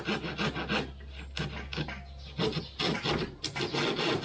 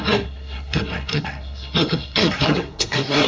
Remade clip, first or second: second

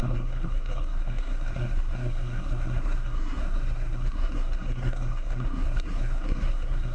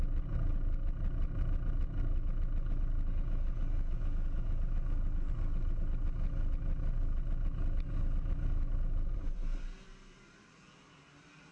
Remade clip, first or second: first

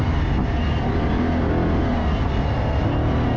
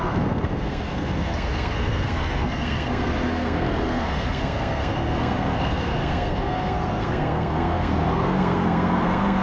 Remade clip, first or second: second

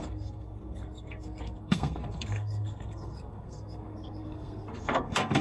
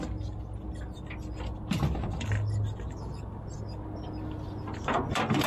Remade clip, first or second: first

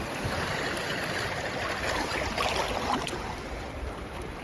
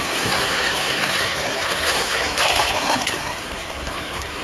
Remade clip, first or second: second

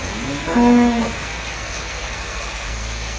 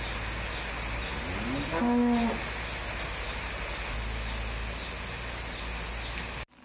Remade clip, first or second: first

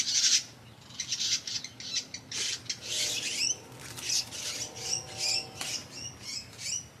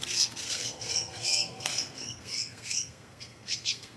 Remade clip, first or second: second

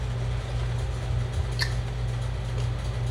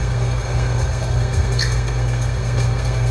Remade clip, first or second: second